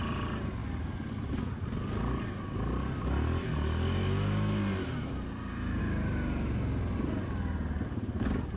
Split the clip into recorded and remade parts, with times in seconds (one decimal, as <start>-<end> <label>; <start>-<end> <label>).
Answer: 0.0-8.6 recorded